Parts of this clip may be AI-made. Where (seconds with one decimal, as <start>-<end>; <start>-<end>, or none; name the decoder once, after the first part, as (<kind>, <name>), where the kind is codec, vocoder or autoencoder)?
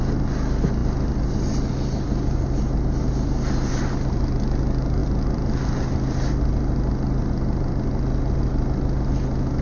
none